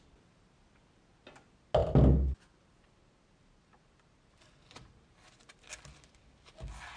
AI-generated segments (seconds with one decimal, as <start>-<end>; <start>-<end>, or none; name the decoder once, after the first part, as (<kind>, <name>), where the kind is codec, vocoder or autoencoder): none